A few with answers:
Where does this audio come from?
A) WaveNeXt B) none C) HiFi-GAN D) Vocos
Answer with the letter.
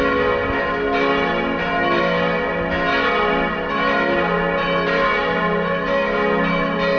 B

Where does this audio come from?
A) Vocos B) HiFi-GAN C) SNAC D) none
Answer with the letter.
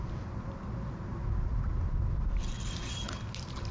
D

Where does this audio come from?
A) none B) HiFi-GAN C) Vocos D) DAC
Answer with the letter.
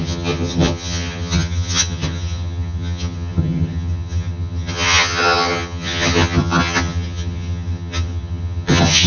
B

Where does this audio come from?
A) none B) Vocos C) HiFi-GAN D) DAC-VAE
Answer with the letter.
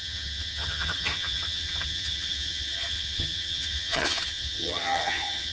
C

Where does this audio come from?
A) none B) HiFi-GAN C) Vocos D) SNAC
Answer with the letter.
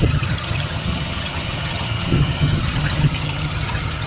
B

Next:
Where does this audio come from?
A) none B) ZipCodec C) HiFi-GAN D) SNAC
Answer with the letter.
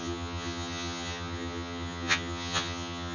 C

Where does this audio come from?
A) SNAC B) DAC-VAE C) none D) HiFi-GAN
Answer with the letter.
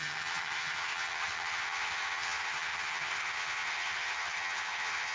D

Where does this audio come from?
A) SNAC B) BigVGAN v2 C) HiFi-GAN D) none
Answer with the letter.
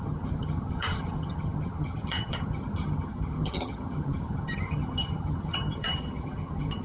C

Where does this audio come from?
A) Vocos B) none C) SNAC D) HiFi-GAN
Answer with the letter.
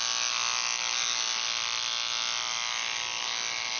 B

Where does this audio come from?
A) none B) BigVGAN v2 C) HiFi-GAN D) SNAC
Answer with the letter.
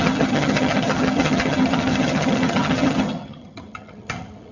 C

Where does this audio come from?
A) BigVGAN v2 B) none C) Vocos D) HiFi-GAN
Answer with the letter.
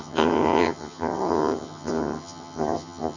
D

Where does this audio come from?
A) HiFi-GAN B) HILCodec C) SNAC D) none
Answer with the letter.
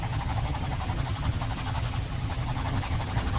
A